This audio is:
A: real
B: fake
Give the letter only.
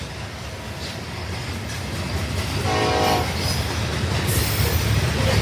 A